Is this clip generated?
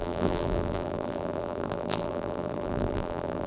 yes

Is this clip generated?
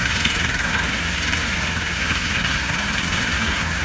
yes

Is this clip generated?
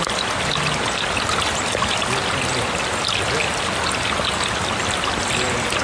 no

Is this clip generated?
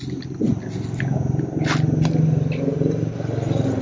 no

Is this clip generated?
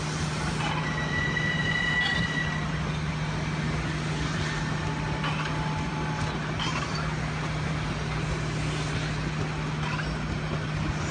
no